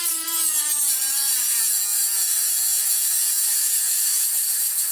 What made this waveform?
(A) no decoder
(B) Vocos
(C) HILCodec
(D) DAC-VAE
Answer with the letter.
B